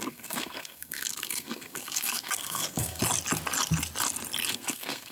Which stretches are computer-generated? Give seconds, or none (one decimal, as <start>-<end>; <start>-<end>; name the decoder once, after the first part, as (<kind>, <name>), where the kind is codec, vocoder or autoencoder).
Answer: 0.0-3.0 (codec, SNAC); 4.5-5.1